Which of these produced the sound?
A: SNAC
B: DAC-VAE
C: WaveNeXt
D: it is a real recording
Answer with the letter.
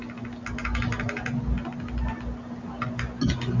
D